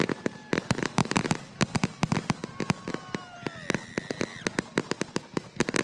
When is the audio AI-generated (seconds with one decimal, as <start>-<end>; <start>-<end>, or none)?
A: none